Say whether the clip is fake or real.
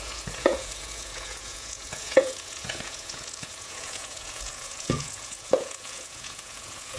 fake